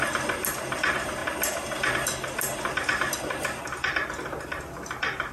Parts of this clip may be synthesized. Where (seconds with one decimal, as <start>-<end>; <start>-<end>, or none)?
none